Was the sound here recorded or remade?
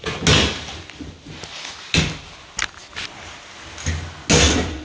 recorded